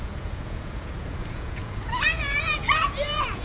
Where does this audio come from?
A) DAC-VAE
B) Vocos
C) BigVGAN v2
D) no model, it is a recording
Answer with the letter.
B